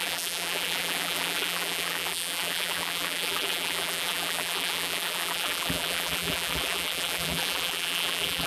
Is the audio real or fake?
fake